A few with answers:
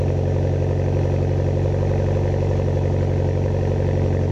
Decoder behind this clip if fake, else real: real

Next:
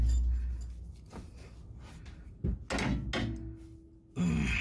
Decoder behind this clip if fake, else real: real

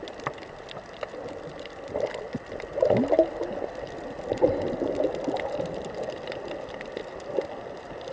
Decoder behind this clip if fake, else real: real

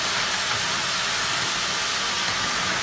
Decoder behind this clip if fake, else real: real